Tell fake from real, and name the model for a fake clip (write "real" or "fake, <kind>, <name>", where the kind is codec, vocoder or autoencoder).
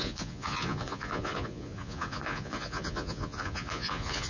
fake, vocoder, Vocos